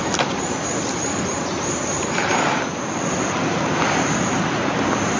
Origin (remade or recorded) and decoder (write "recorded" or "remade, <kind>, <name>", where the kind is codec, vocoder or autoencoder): recorded